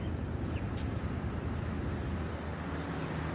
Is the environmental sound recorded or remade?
recorded